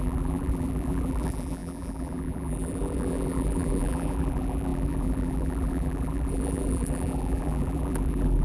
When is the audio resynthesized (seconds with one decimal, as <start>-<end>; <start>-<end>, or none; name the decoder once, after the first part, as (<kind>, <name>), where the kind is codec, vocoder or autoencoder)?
0.0-8.4 (vocoder, BigVGAN v2)